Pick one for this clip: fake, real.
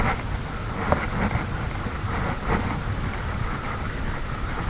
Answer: real